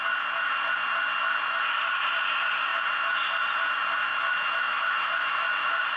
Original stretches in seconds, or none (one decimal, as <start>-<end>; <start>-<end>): 0.0-4.1